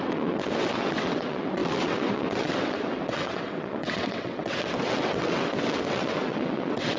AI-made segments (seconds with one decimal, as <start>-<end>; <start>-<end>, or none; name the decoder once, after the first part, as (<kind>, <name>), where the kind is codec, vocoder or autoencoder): 0.0-7.0 (vocoder, WaveNeXt)